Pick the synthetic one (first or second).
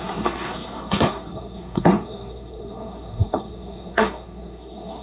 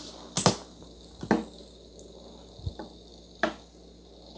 first